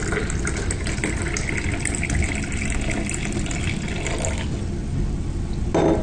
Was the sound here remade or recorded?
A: recorded